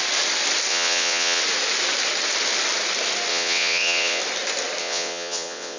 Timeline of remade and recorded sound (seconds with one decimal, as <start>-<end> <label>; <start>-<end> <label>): 0.0-0.7 recorded; 0.7-1.4 remade; 1.4-3.3 recorded; 3.3-4.2 remade; 4.2-4.8 recorded; 4.8-5.8 remade